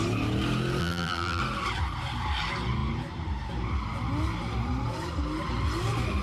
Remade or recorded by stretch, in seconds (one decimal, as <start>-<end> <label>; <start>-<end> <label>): 0.0-0.8 recorded; 0.8-1.4 remade; 1.4-6.2 recorded